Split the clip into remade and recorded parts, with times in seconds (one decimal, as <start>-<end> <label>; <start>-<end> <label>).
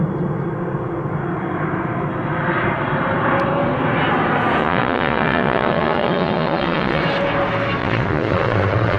0.0-4.6 recorded; 4.6-7.0 remade; 7.0-7.8 recorded; 7.8-9.0 remade